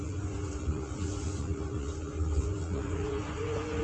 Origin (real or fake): fake